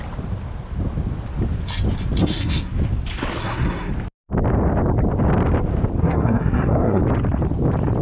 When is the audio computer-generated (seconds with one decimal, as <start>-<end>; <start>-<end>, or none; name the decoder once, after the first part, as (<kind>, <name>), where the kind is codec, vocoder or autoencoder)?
2.2-2.7 (codec, SNAC); 3.4-3.9; 6.0-7.0